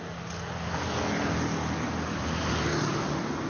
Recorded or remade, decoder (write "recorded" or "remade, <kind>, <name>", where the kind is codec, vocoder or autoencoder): recorded